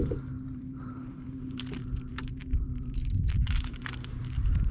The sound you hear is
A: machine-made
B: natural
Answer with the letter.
A